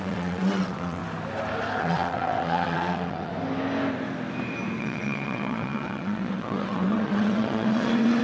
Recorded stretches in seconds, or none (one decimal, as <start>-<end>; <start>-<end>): 1.0-1.8; 3.3-4.8